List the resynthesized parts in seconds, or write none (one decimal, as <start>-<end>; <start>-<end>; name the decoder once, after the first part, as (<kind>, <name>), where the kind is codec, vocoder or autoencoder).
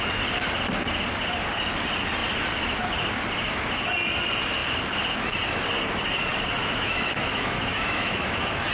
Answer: 6.6-8.7 (autoencoder, DAC-VAE)